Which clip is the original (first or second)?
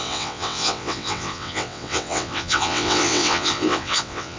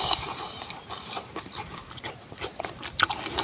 second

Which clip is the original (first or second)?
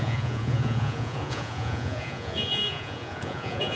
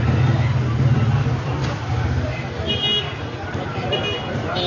second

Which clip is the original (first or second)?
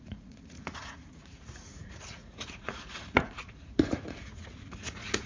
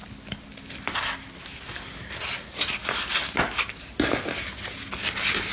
second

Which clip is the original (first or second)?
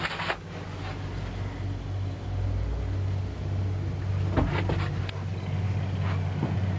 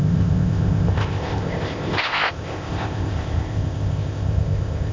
first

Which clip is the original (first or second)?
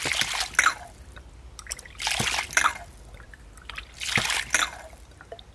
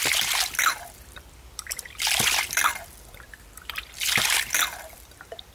first